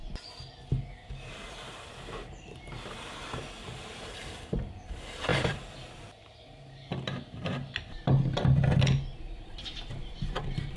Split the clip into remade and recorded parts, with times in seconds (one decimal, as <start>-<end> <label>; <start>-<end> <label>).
0.0-1.0 recorded; 1.0-6.9 remade; 6.9-9.2 recorded; 9.2-10.8 remade